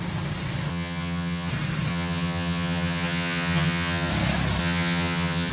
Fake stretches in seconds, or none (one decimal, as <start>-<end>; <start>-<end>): 0.7-1.5; 1.9-4.1; 4.6-5.5

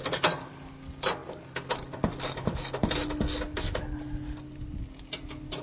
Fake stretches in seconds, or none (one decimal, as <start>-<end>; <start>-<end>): none

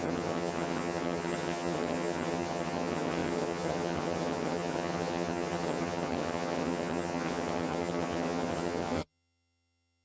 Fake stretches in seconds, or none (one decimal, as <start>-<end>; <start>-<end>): 0.0-10.0

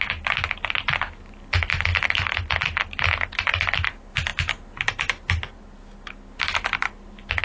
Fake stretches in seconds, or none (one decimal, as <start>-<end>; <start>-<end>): none

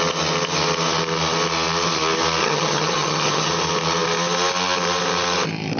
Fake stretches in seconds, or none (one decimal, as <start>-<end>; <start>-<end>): 2.4-3.5

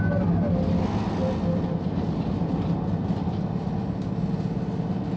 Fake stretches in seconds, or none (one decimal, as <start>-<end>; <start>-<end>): none